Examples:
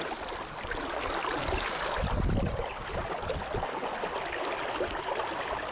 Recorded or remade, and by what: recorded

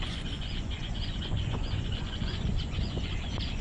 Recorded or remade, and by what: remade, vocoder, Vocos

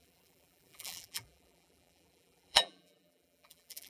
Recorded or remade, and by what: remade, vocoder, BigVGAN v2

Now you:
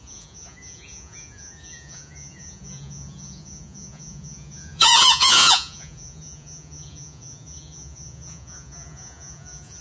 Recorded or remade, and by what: remade, vocoder, Vocos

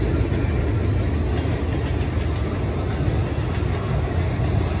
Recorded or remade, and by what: recorded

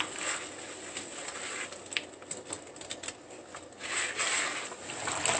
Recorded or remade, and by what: recorded